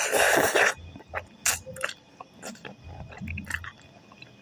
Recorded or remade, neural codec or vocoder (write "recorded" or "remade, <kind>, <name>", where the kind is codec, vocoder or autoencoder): recorded